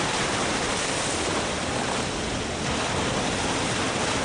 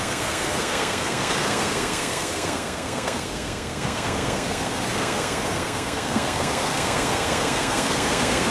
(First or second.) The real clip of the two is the first